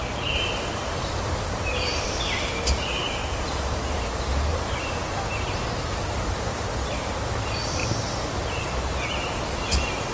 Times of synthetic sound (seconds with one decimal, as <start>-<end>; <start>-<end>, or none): 0.0-3.2; 6.1-7.8; 8.5-10.1